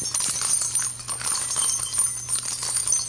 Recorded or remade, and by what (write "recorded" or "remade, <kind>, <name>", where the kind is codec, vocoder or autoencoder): recorded